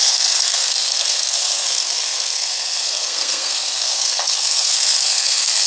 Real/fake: fake